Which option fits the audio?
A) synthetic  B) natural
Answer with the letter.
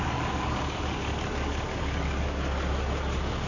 A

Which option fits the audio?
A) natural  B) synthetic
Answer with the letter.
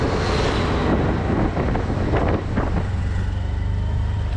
A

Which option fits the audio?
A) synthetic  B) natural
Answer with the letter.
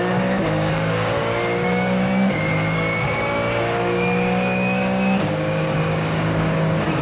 A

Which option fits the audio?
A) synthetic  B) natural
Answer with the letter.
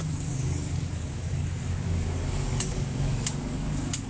A